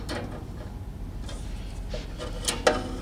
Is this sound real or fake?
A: real